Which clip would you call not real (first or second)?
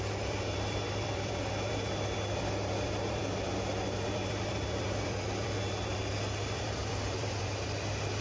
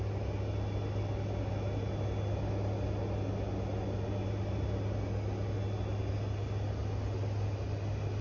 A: first